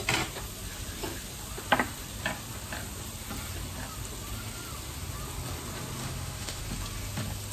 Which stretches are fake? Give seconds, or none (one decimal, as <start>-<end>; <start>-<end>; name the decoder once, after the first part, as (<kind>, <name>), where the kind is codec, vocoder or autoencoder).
6.0-6.6 (autoencoder, DAC-VAE)